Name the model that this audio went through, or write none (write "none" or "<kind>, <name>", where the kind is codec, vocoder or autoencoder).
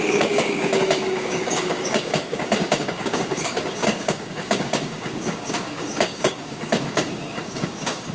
codec, DAC